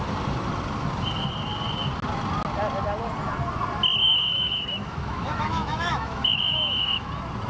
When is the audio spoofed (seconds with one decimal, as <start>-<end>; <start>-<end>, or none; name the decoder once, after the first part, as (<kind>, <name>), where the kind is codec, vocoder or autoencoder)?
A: 4.0-7.1 (autoencoder, DAC-VAE)